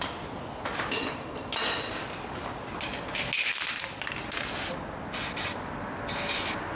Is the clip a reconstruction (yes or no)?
no